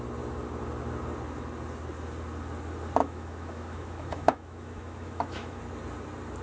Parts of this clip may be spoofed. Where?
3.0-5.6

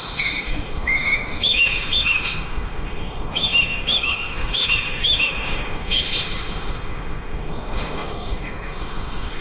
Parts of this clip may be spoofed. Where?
0.0-9.4

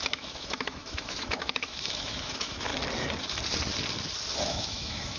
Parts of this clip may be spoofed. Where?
0.0-2.7; 4.4-5.2